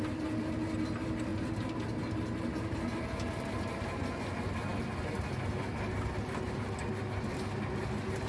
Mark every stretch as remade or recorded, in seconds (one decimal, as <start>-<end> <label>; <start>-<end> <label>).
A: 0.0-8.3 recorded